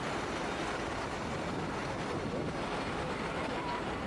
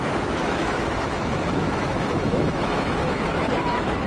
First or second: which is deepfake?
second